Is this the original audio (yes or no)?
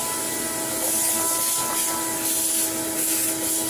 yes